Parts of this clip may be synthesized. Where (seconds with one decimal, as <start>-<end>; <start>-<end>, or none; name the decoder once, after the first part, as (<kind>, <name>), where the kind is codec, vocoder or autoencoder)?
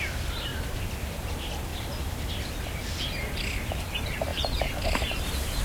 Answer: 0.0-0.5 (vocoder, BigVGAN v2); 1.2-1.7; 3.8-5.6